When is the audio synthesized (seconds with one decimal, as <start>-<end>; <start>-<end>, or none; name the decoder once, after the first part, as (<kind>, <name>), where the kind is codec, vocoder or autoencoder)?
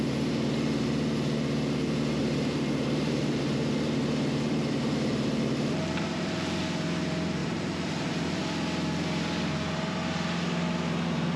2.2-6.6 (vocoder, BigVGAN v2); 7.4-8.4